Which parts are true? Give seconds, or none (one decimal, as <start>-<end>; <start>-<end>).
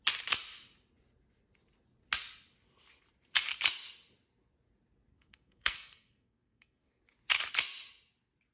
0.0-5.1; 7.0-8.5